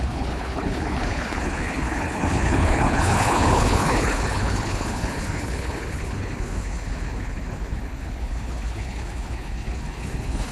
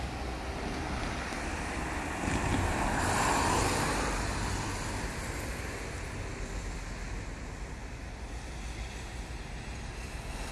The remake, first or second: first